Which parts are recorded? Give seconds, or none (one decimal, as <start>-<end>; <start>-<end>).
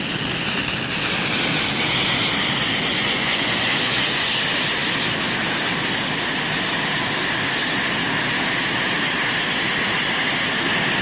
0.0-2.9; 4.3-11.0